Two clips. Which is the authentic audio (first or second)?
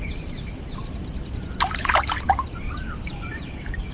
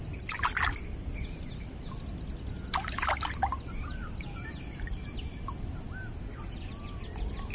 second